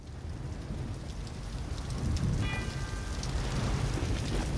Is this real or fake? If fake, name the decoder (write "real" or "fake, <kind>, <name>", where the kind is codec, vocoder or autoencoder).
real